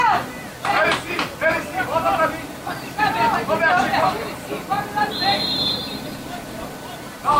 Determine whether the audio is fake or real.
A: fake